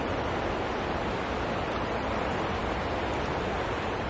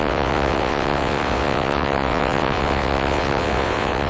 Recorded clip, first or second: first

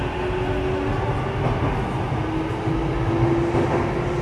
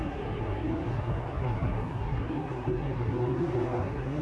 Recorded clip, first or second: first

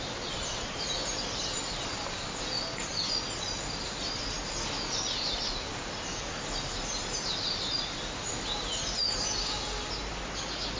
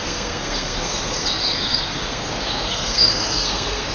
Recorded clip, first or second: first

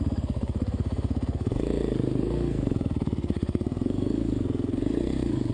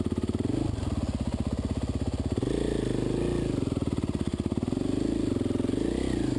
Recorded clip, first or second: second